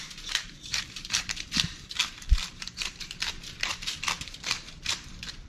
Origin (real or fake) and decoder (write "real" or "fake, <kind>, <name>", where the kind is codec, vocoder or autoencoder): fake, vocoder, BigVGAN v2